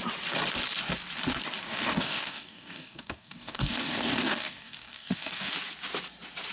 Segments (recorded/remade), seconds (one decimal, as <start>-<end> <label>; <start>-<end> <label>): 0.0-1.6 recorded; 1.6-5.5 remade; 5.5-6.5 recorded